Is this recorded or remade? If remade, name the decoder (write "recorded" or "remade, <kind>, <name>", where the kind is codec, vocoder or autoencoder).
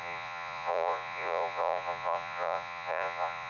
remade, vocoder, Vocos